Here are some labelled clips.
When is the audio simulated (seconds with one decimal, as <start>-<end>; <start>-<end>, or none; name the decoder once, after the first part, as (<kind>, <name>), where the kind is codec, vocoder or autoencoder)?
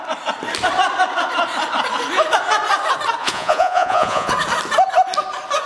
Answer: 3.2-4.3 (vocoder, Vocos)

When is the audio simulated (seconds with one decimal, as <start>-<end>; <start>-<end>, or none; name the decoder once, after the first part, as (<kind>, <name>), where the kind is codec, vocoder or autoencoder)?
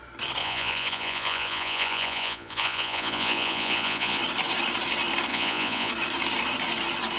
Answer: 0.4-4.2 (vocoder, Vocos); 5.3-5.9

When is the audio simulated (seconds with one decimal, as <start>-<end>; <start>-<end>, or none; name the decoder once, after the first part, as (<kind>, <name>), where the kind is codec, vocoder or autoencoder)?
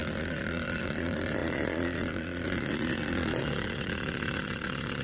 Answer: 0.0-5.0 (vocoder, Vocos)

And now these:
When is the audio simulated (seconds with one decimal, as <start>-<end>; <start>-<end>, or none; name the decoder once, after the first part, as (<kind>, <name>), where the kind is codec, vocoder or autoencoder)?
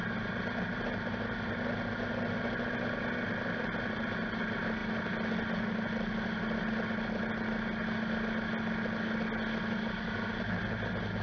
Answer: none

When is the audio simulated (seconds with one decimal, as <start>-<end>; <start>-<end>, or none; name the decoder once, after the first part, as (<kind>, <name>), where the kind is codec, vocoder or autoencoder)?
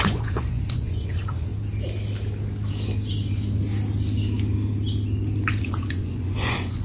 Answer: 0.0-1.5 (vocoder, Vocos); 5.6-6.8